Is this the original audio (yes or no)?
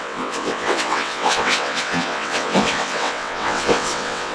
no